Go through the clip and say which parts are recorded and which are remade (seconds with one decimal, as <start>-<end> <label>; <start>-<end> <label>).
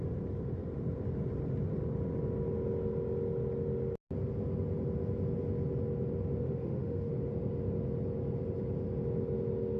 0.0-6.4 recorded; 6.4-7.1 remade; 7.1-9.8 recorded